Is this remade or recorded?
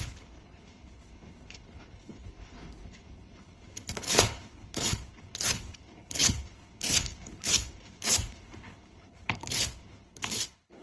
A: remade